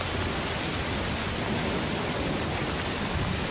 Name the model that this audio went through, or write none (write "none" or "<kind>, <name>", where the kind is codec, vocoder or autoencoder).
none